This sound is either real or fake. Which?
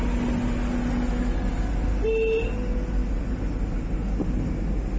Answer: real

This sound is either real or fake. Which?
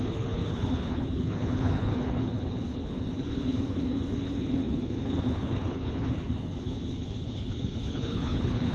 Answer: fake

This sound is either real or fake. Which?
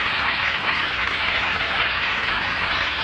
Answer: fake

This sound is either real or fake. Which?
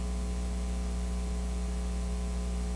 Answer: real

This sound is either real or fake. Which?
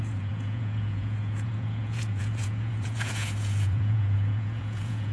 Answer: fake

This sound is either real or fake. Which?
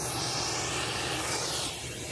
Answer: real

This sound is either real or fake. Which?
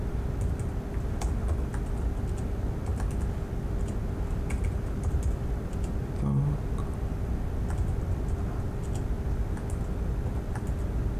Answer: real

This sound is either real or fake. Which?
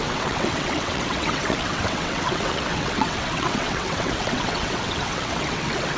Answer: fake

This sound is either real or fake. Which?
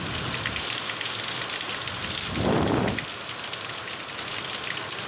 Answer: real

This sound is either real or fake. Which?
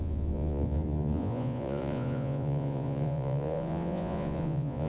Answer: fake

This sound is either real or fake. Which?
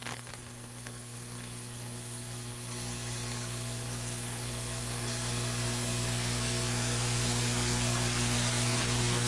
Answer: fake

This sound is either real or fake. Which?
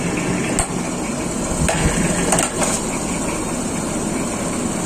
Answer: real